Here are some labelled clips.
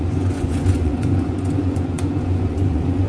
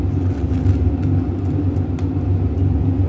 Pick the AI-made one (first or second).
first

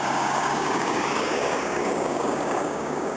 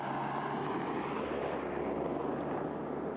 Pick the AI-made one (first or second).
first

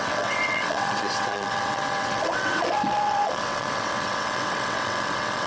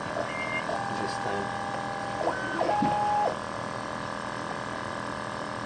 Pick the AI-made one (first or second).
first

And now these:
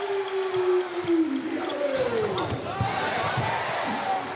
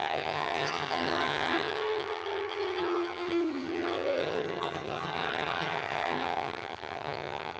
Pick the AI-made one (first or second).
second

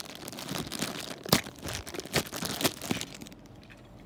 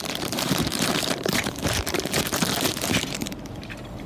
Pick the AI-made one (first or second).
second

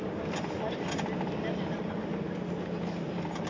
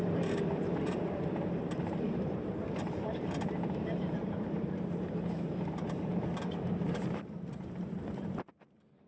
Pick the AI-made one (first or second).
second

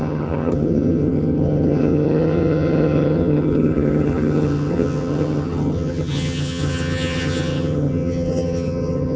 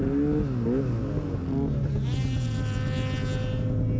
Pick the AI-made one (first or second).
first